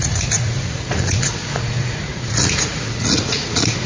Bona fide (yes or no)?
no